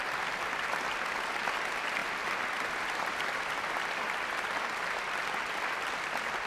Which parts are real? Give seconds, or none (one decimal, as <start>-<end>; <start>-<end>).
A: 0.0-6.5